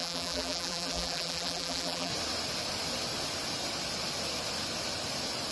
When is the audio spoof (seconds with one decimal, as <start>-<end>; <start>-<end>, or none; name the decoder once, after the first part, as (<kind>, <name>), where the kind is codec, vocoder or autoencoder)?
0.0-2.1 (vocoder, BigVGAN v2)